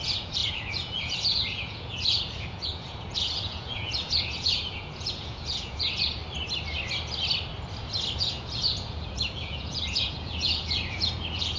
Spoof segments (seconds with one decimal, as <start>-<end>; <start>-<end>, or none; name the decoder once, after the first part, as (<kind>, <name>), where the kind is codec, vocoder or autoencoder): 0.0-6.2 (vocoder, Vocos); 8.2-11.6